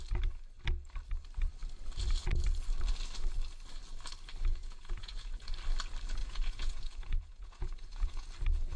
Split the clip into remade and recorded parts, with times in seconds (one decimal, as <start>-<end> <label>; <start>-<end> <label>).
0.0-4.5 recorded; 4.5-5.5 remade; 5.5-6.2 recorded; 6.2-8.3 remade; 8.3-8.8 recorded